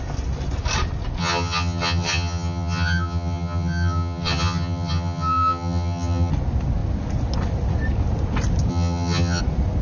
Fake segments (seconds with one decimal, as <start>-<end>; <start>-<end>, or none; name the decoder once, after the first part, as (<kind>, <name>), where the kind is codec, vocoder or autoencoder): 1.2-6.3 (vocoder, HiFi-GAN); 8.7-9.4